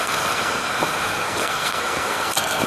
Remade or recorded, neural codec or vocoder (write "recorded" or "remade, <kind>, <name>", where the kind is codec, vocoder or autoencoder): remade, codec, SNAC